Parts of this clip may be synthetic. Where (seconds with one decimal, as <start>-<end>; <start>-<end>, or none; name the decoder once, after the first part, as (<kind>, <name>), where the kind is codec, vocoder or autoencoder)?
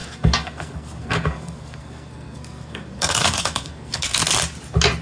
0.0-4.2 (codec, SNAC)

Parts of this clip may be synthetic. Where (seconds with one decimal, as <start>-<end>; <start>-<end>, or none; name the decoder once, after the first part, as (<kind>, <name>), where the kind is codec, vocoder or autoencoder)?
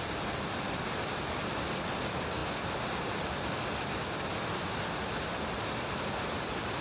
none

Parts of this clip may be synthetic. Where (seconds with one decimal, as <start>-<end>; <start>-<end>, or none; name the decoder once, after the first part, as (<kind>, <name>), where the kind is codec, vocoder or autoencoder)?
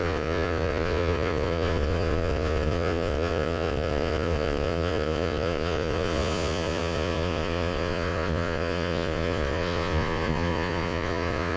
0.0-11.6 (vocoder, Vocos)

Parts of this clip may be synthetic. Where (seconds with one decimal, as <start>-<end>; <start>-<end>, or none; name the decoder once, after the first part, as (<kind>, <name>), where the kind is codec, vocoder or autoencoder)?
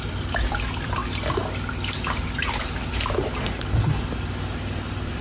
0.0-1.0 (vocoder, BigVGAN v2); 4.1-5.2